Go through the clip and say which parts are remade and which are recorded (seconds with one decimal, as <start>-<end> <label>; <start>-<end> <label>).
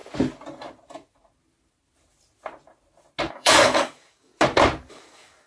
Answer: 0.0-3.3 recorded; 3.3-4.3 remade; 4.3-4.9 recorded; 4.9-5.5 remade